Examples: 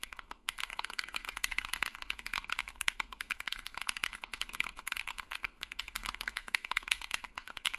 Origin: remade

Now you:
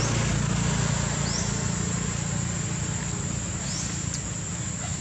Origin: recorded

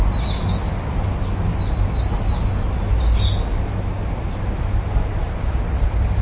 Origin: recorded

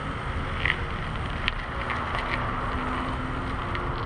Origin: recorded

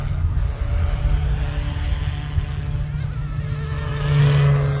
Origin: recorded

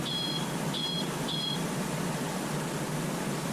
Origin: recorded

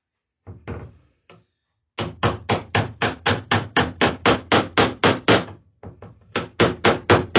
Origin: recorded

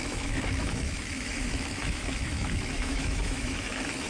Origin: remade